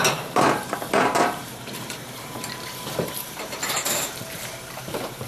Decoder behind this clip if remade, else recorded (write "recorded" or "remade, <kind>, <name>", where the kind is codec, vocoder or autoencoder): remade, vocoder, BigVGAN v2